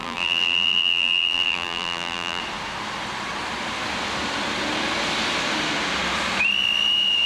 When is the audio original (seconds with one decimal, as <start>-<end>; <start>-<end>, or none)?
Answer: 2.4-7.3